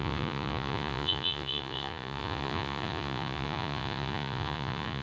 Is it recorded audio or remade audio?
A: remade